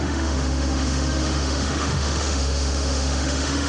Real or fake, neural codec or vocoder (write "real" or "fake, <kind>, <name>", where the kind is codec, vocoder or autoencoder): fake, autoencoder, DAC-VAE